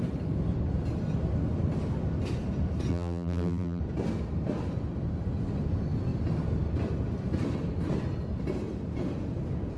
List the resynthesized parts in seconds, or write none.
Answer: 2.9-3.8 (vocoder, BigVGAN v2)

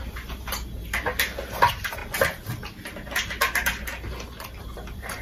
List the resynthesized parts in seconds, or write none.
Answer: 0.0-2.0 (vocoder, BigVGAN v2); 4.6-5.2

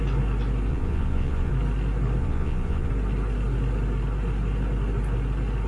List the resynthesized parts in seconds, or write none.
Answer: 0.7-1.5 (vocoder, Vocos); 2.2-2.9

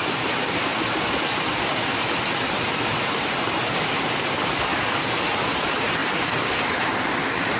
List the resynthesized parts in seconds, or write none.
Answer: none

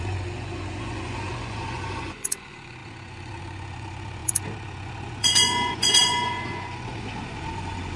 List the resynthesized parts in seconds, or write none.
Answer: 0.0-8.0 (vocoder, Vocos)